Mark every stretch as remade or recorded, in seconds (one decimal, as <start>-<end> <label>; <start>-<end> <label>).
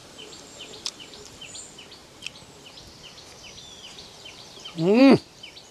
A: 0.0-1.6 remade; 1.6-2.0 recorded; 2.0-2.7 remade; 2.7-3.9 recorded; 3.9-5.0 remade; 5.0-5.7 recorded